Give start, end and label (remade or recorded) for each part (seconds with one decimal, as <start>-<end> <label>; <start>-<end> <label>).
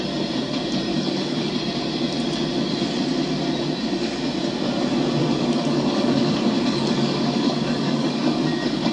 0.0-0.9 recorded; 0.9-1.5 remade; 1.5-5.2 recorded; 5.2-8.9 remade